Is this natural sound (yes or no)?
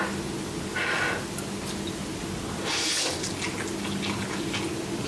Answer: yes